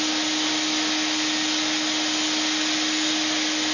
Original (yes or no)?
yes